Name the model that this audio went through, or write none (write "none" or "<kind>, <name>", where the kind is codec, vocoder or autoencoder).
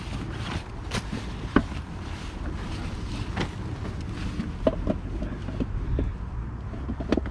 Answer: none